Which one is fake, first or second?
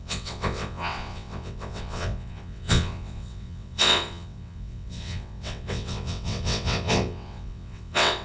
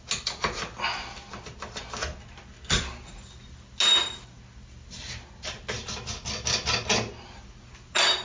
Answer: first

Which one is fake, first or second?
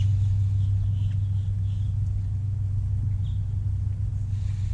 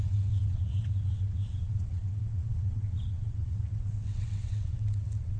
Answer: second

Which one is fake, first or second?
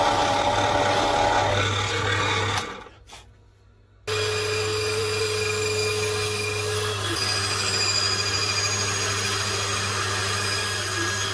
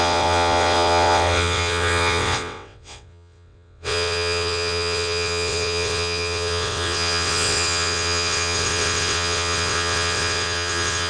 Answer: second